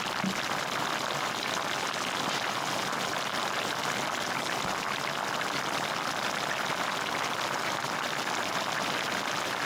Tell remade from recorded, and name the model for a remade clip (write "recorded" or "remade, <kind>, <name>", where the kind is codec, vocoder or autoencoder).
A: recorded